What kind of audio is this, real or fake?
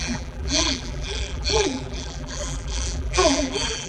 fake